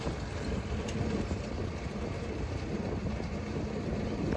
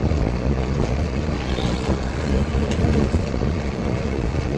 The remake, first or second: second